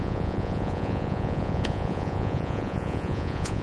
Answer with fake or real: fake